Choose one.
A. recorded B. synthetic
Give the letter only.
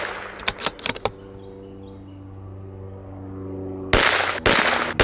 A